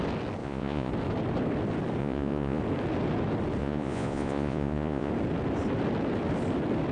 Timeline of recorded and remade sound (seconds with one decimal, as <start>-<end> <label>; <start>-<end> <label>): 0.0-0.4 recorded; 0.4-0.9 remade; 0.9-2.0 recorded; 2.0-2.6 remade; 2.6-3.6 recorded; 3.6-5.1 remade; 5.1-6.9 recorded